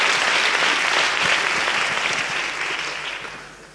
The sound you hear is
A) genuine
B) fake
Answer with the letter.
A